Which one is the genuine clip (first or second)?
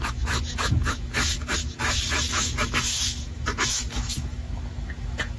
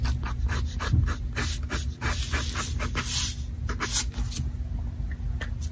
second